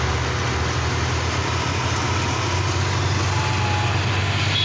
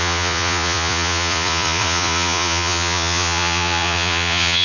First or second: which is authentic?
first